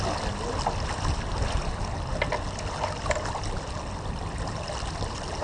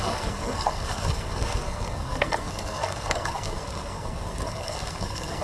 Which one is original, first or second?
first